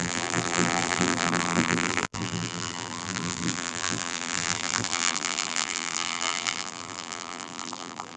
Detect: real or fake fake